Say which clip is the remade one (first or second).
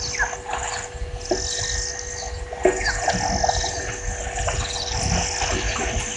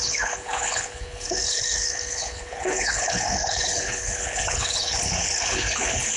second